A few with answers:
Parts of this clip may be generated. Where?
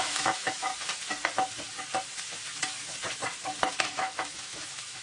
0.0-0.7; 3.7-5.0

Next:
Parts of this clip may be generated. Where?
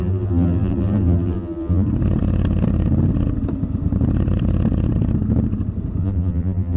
0.0-1.9; 6.0-6.8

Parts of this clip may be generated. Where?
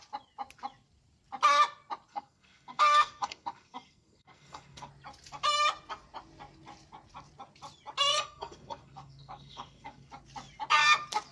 2.1-4.9; 8.1-10.1